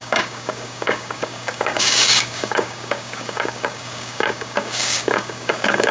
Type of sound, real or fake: fake